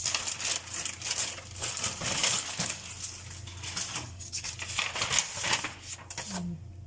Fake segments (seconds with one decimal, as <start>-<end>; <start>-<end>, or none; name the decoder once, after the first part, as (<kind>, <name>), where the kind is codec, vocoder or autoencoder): 2.2-2.9 (codec, DAC); 3.9-4.5